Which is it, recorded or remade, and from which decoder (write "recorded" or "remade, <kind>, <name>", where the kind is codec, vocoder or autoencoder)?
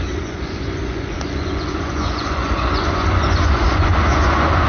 remade, vocoder, Vocos